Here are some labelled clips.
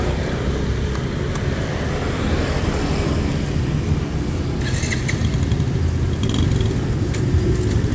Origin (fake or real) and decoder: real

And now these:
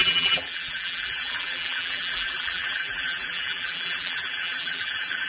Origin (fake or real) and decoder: fake, vocoder, BigVGAN v2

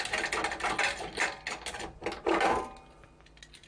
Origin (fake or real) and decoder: real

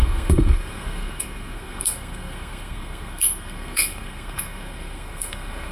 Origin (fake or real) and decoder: fake, codec, SNAC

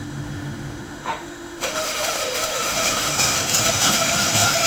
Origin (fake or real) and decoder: fake, autoencoder, DAC-VAE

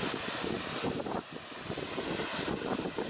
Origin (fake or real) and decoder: real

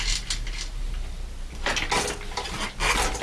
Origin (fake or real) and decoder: real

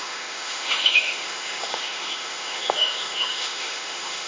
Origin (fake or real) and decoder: fake, autoencoder, DAC-VAE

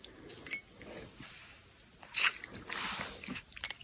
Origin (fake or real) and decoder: real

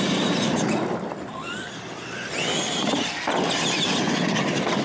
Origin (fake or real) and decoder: real